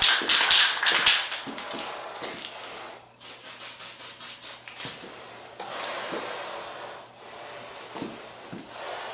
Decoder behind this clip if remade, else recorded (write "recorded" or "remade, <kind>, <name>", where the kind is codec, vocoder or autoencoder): recorded